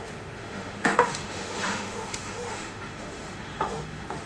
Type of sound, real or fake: fake